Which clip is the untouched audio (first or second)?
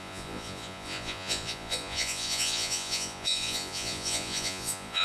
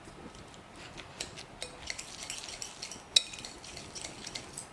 second